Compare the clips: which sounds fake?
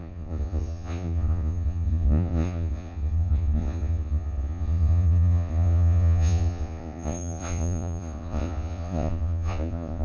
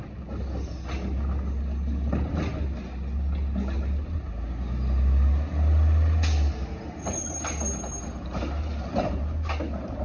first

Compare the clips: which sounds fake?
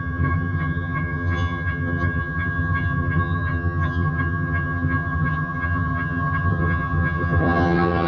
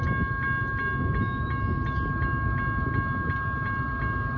first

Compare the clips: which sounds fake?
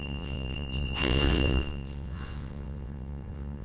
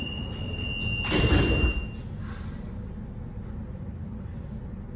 first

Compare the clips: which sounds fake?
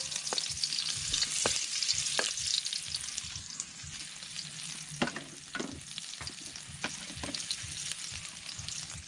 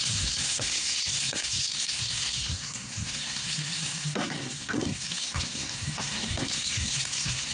second